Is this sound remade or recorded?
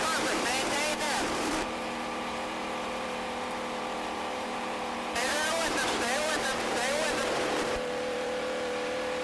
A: remade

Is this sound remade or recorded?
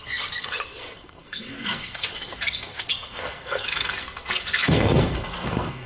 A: remade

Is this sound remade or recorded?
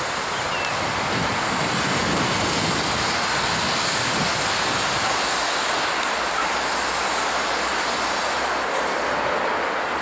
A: recorded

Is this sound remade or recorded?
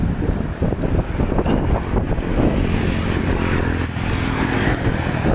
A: recorded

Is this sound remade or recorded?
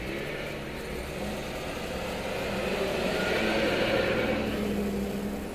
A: recorded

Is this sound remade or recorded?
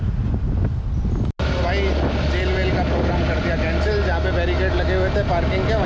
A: recorded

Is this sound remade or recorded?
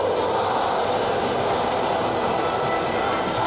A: recorded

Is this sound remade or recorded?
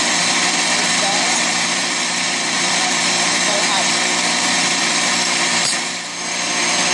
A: remade